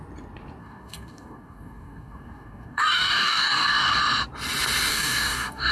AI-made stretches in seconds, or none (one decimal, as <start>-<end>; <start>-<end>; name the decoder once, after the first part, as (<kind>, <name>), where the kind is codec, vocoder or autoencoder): 0.6-4.0 (codec, DAC); 4.9-5.7